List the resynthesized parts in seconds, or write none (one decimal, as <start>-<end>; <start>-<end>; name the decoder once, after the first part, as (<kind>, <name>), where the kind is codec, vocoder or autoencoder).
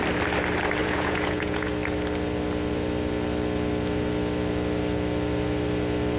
0.8-1.7 (vocoder, Vocos)